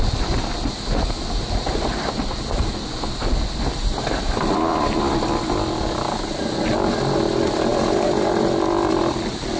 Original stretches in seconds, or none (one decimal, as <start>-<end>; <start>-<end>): 0.0-9.6